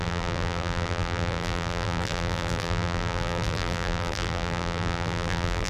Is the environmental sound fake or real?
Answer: fake